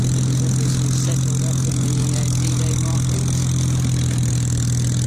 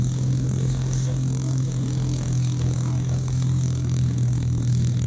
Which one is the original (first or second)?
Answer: first